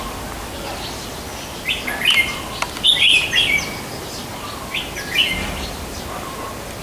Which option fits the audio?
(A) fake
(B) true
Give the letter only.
B